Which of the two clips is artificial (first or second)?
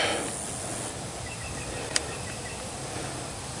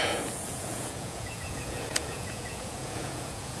second